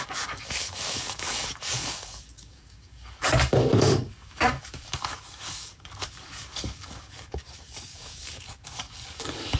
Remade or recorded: remade